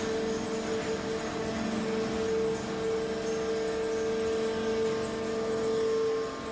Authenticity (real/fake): real